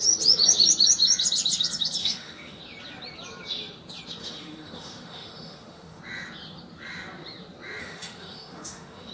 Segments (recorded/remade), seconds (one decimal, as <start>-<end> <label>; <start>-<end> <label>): 0.0-2.0 recorded; 2.0-2.6 remade; 2.6-4.2 recorded; 4.2-6.0 remade; 6.0-7.8 recorded; 7.8-9.1 remade